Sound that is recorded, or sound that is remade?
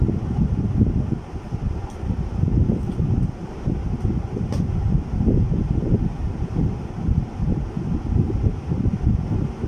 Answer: recorded